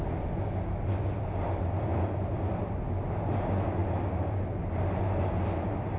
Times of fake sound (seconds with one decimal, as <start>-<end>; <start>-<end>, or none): none